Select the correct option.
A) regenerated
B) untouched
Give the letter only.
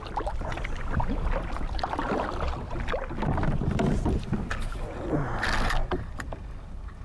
B